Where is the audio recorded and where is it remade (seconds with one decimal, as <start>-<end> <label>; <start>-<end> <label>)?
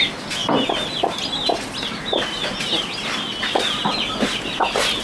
0.0-3.8 recorded; 3.8-4.3 remade; 4.3-5.0 recorded